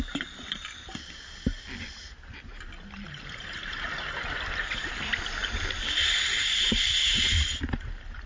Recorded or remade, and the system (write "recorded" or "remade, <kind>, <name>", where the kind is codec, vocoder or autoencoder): recorded